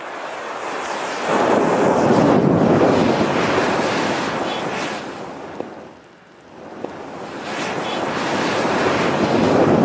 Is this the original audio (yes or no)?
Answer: yes